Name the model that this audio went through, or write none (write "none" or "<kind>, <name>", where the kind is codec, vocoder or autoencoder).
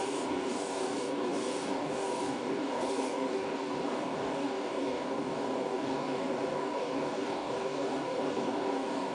codec, DAC